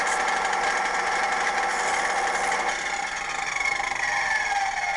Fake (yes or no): no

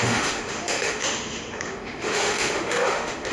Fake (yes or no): yes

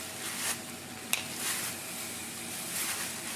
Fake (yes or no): no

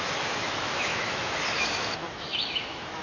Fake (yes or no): yes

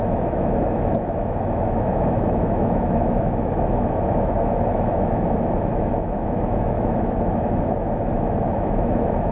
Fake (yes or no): yes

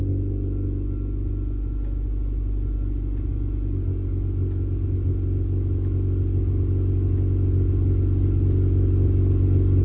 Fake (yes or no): no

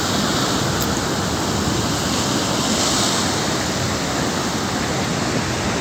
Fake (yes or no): no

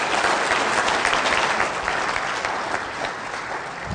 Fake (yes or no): no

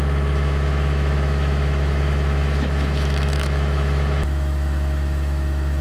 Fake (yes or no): yes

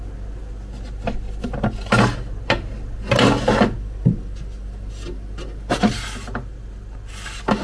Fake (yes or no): no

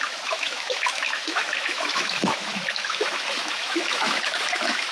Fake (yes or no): yes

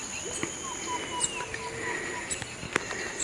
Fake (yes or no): no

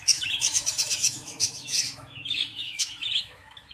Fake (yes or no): yes